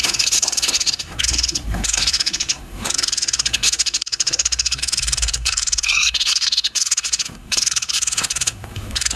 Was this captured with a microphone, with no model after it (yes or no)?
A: no